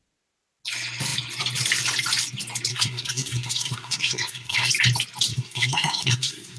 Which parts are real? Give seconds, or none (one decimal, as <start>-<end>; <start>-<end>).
0.0-2.7; 4.7-5.3